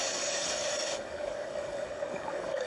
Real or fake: fake